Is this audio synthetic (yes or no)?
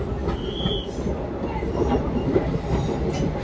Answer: no